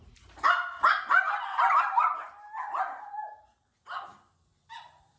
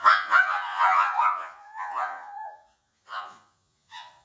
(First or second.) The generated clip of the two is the second